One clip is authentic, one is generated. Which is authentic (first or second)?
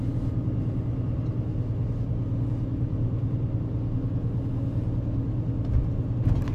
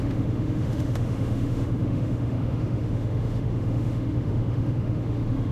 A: first